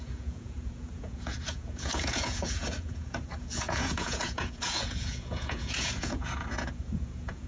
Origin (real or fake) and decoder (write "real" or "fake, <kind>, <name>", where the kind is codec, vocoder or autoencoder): fake, vocoder, Vocos